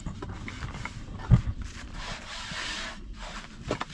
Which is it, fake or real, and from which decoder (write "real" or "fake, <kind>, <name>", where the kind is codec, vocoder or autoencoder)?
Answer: real